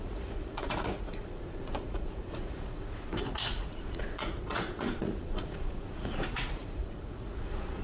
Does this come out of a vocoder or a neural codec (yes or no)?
yes